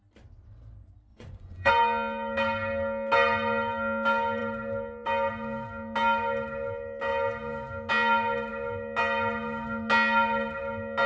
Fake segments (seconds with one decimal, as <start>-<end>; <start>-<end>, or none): 1.1-1.7